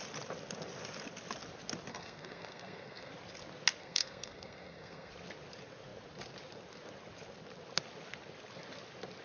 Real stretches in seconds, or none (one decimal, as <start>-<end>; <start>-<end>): 0.0-1.9; 3.1-3.8; 5.1-9.2